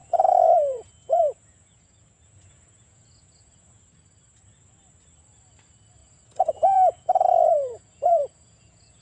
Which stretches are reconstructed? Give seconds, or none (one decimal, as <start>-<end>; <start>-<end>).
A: 0.0-3.8; 6.0-9.0